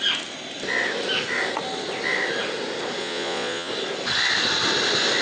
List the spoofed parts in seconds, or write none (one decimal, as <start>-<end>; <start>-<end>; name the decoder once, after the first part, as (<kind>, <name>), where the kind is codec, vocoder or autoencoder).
3.0-3.7 (vocoder, Vocos)